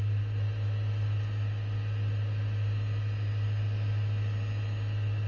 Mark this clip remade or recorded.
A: recorded